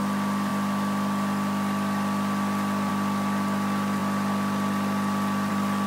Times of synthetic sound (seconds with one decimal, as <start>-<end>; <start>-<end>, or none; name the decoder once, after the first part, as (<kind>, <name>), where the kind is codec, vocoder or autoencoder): none